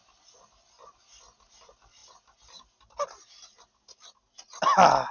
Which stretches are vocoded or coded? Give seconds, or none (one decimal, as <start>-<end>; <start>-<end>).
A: none